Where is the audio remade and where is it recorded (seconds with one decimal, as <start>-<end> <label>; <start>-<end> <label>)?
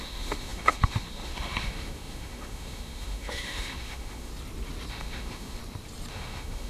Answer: 0.0-4.3 remade; 4.3-4.9 recorded; 4.9-5.6 remade; 5.6-6.1 recorded; 6.1-6.7 remade